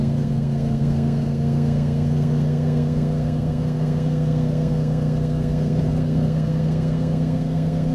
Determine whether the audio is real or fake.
fake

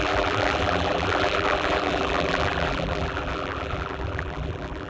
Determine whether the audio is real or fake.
fake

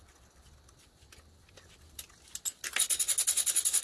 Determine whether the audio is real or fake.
real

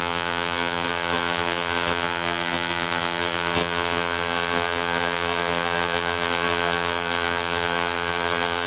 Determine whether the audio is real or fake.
fake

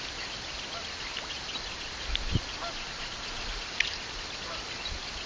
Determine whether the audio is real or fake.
real